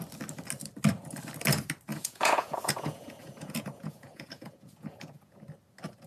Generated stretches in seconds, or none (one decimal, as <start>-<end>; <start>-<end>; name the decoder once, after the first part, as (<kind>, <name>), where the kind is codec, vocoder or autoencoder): 1.9-5.4 (vocoder, Vocos)